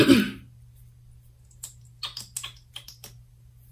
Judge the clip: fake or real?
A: real